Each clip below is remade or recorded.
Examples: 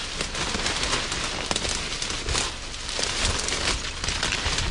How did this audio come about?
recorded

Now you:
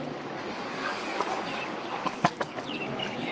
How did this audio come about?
remade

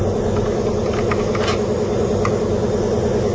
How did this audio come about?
recorded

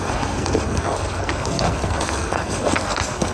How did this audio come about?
remade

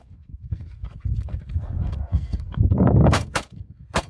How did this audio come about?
remade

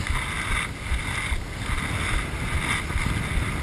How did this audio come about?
recorded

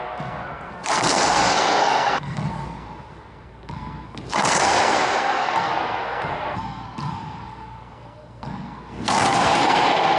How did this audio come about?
remade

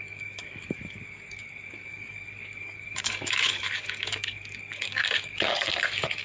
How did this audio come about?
remade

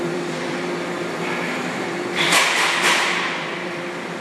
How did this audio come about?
remade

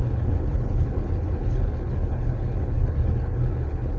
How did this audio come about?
remade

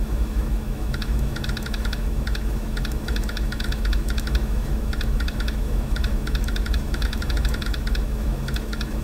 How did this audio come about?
remade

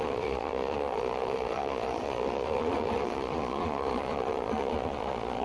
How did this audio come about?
remade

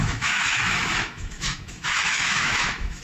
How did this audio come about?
remade